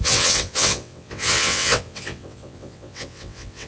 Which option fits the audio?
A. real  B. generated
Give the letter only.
B